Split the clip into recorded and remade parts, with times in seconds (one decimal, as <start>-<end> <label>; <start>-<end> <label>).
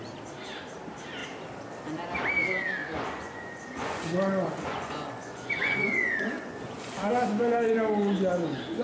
0.0-2.8 recorded; 2.8-7.1 remade; 7.1-8.8 recorded